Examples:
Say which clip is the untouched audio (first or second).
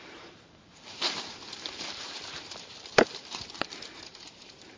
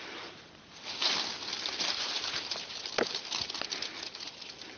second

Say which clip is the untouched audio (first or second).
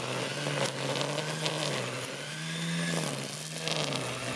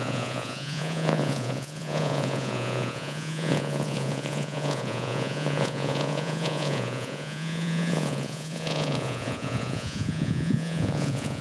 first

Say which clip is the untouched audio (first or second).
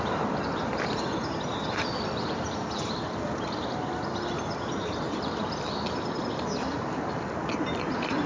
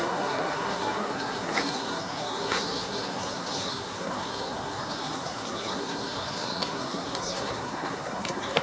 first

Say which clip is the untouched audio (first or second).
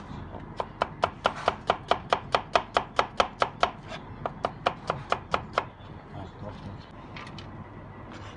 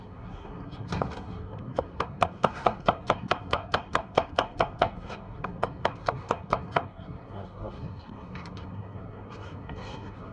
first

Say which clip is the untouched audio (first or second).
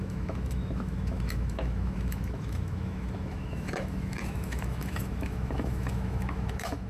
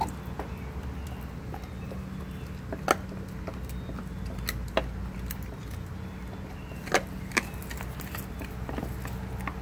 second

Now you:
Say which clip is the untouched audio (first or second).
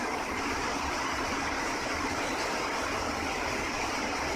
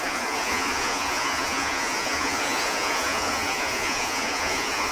first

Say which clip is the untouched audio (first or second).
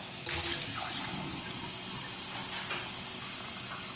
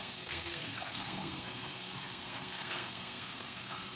first